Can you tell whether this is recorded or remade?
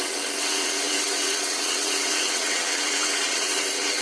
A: remade